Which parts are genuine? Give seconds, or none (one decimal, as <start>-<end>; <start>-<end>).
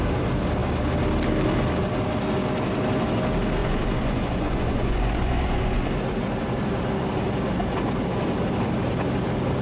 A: 0.0-3.6; 5.9-9.6